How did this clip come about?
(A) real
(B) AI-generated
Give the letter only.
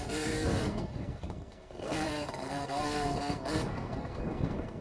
B